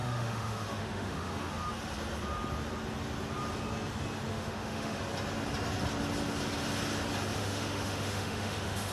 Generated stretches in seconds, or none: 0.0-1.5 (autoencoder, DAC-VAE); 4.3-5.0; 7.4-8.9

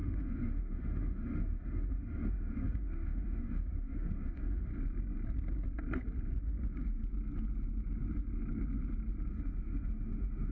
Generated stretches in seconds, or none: 0.0-4.7 (autoencoder, DAC-VAE); 9.3-10.5

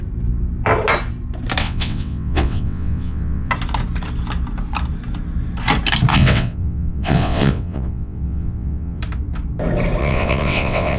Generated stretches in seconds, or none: 1.6-3.5 (vocoder, WaveNeXt); 6.1-9.0; 10.0-11.0